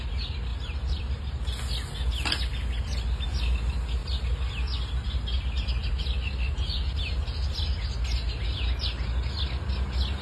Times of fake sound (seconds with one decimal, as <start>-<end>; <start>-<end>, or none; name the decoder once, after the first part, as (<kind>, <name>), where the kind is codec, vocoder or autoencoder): 0.5-1.2 (vocoder, BigVGAN v2)